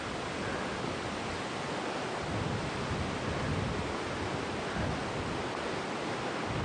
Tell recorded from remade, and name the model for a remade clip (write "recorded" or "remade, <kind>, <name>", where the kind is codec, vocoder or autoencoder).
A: recorded